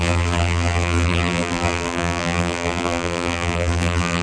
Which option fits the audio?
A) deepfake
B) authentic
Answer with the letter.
A